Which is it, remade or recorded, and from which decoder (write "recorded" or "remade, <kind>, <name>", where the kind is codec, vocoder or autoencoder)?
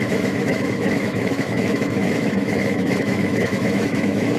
remade, autoencoder, DAC-VAE